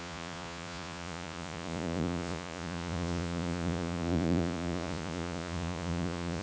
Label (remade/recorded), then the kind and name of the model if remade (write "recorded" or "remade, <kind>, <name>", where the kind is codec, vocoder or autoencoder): remade, vocoder, Vocos